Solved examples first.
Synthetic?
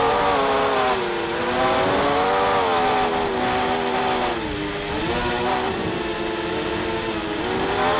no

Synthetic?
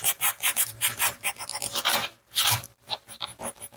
yes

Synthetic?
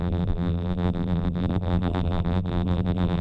yes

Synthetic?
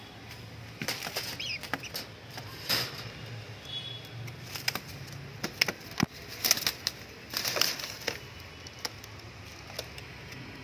no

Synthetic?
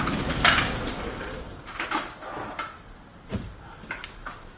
yes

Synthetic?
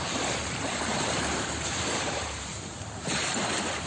yes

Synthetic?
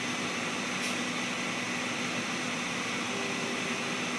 no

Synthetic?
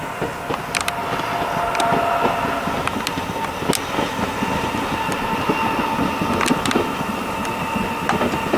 no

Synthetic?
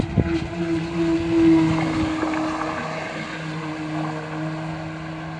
no